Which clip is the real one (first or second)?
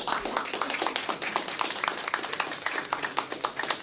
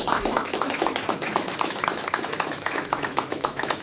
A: first